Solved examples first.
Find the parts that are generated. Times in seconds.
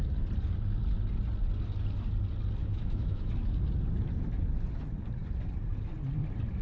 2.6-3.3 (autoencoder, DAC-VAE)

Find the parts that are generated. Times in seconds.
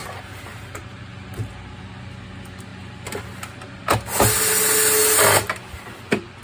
none